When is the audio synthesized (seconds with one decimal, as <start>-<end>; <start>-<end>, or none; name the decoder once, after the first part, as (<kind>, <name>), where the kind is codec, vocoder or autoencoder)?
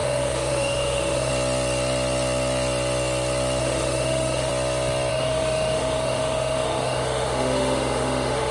0.0-1.3 (autoencoder, DAC-VAE); 3.6-4.5; 5.1-8.5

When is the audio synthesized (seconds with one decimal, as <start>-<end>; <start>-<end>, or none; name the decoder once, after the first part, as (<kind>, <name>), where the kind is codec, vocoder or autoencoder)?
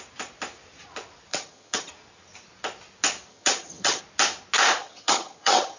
1.3-1.9 (vocoder, HiFi-GAN); 3.3-4.0; 4.8-5.8